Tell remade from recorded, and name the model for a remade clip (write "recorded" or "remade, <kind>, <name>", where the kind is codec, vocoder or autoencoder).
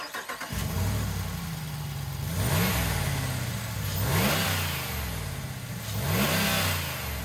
recorded